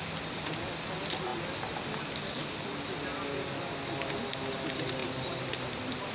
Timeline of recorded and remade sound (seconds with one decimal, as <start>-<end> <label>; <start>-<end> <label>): 0.0-6.1 recorded